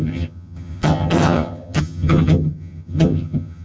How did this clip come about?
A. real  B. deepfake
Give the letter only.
B